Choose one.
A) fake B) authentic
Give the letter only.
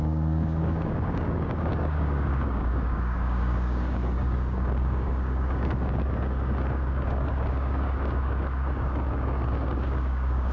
A